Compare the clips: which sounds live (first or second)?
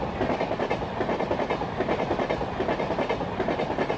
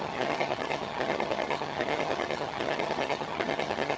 first